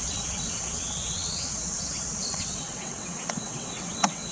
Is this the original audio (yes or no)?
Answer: no